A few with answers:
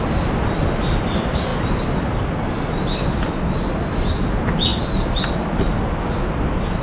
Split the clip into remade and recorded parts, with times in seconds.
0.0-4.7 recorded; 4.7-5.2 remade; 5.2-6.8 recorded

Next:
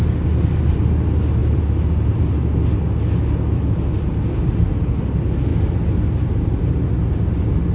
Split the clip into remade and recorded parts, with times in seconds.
0.0-7.7 recorded

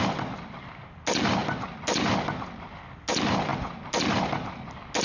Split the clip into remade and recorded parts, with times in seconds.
0.0-5.0 recorded

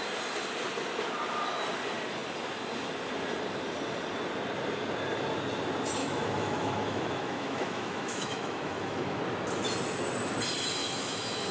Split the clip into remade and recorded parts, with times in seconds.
0.0-6.0 recorded; 6.0-9.2 remade; 9.2-10.8 recorded; 10.8-11.5 remade

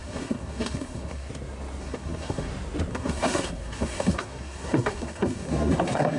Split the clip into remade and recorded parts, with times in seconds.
0.0-1.3 remade; 1.3-1.8 recorded; 1.8-2.5 remade; 2.5-2.9 recorded; 2.9-6.2 remade

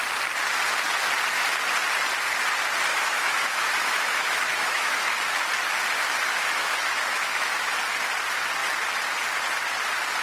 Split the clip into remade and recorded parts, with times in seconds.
0.0-2.9 recorded; 2.9-5.2 remade; 5.2-6.3 recorded; 6.3-7.7 remade; 7.7-10.2 recorded

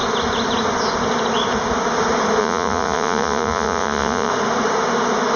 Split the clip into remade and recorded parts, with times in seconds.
0.0-2.4 recorded; 2.4-4.3 remade; 4.3-5.4 recorded